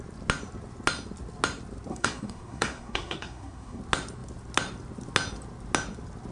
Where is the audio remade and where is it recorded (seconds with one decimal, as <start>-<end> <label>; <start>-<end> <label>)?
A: 0.0-1.9 recorded; 1.9-3.8 remade; 3.8-6.3 recorded